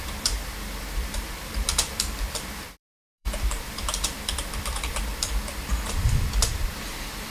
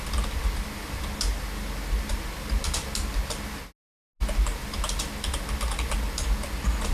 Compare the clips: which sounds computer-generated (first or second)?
first